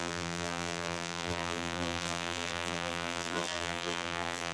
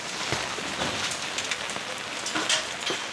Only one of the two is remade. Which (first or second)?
first